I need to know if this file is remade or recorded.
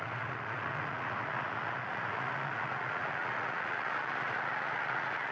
remade